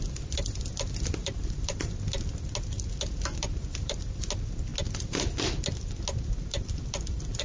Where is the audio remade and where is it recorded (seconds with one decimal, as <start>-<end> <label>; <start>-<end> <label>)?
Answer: 0.0-1.2 recorded; 1.2-1.9 remade; 1.9-3.6 recorded; 3.6-4.3 remade; 4.3-7.4 recorded